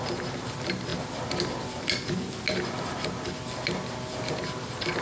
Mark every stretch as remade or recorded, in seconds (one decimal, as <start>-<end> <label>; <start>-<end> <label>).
0.0-5.0 recorded